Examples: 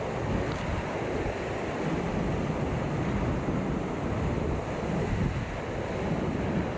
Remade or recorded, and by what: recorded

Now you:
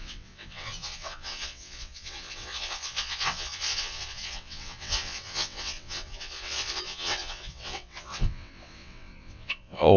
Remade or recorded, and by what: remade, vocoder, WaveNeXt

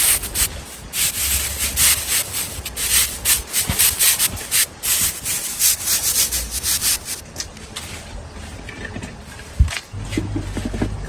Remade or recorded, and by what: recorded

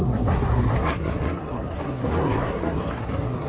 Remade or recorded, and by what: remade, codec, SNAC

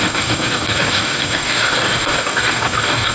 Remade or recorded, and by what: remade, codec, DAC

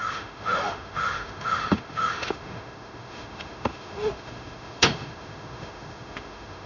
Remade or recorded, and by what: remade, autoencoder, DAC-VAE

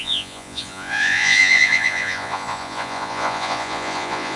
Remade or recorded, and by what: remade, vocoder, Vocos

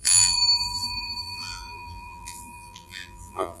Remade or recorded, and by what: remade, vocoder, BigVGAN v2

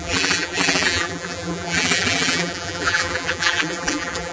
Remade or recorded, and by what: remade, vocoder, BigVGAN v2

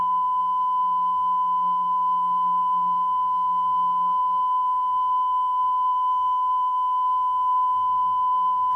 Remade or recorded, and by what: remade, codec, SNAC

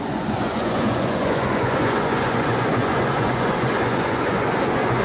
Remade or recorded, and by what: remade, vocoder, Vocos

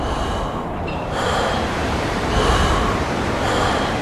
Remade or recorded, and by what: remade, vocoder, BigVGAN v2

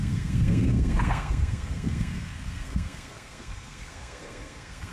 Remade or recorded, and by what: remade, codec, SNAC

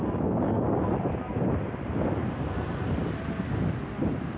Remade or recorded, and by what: recorded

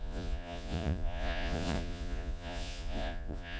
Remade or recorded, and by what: remade, vocoder, Vocos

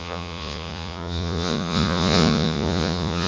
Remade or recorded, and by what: remade, vocoder, Vocos